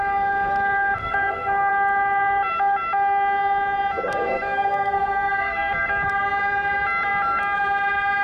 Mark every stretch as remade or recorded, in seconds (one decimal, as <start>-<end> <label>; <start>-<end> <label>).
0.0-1.0 recorded; 1.0-1.7 remade; 1.7-4.1 recorded; 4.1-5.7 remade; 5.7-8.2 recorded